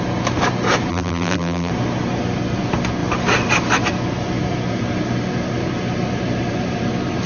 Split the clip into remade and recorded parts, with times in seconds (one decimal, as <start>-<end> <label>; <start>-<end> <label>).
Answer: 0.0-0.9 recorded; 0.9-1.7 remade; 1.7-7.3 recorded